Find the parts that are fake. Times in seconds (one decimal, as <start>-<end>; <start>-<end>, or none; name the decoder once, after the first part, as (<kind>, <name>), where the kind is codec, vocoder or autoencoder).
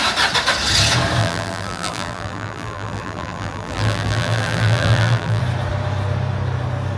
1.2-5.4 (vocoder, BigVGAN v2)